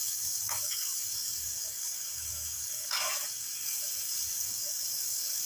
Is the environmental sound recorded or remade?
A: remade